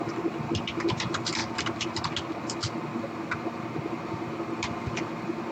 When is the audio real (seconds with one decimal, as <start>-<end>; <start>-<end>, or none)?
0.0-5.5